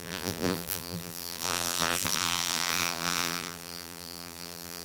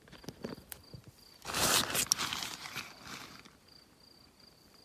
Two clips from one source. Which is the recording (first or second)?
second